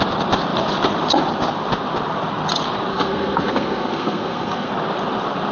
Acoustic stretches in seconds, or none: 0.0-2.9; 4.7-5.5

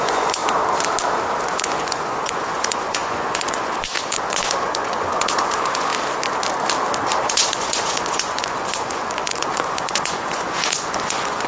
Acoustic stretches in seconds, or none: 0.4-1.4; 5.9-7.2

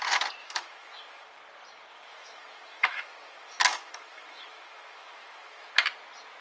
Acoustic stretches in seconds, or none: 0.0-0.4; 1.4-1.9; 5.7-6.4

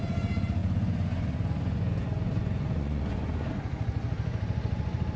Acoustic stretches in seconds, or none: 0.0-0.6; 3.5-5.2

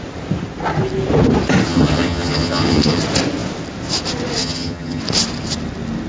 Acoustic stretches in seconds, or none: 0.0-1.7; 3.0-4.4; 5.0-6.1